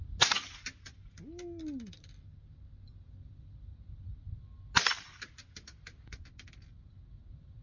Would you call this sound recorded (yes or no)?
yes